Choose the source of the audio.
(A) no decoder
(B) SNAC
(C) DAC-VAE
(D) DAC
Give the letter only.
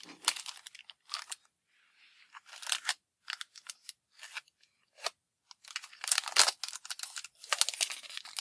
A